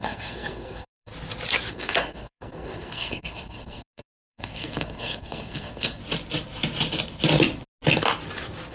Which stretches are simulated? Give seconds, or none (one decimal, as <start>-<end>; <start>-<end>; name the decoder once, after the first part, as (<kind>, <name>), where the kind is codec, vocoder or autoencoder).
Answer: 0.0-1.1 (codec, SNAC); 1.7-6.0